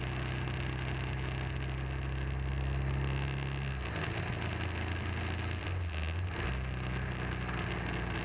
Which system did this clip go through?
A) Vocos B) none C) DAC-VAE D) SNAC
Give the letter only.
B